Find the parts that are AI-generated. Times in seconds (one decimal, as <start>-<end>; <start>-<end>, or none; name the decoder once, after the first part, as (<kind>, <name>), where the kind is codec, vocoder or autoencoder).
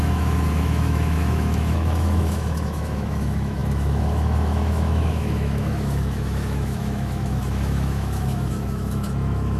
0.0-9.6 (autoencoder, DAC-VAE)